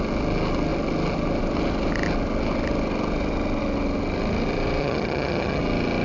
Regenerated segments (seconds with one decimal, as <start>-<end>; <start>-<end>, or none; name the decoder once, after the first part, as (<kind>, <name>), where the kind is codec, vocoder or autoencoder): 4.8-5.6 (vocoder, HiFi-GAN)